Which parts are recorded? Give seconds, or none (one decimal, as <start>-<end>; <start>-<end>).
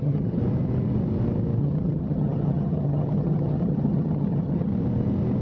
0.4-1.6; 4.7-5.4